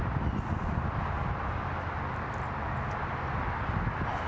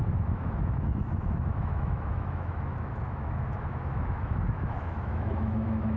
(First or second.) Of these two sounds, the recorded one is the first